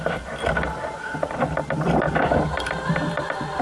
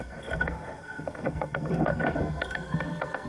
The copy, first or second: second